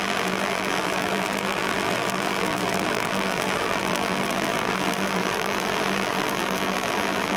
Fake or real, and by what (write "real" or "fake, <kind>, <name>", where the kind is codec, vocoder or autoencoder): fake, vocoder, BigVGAN v2